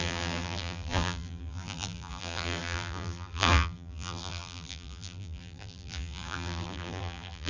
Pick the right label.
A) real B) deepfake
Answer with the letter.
B